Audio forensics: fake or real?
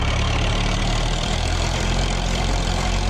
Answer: fake